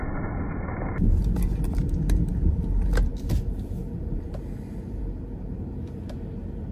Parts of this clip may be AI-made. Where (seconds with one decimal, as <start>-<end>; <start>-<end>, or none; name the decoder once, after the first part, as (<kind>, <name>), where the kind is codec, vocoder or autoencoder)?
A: none